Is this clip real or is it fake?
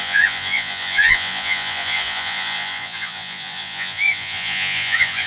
fake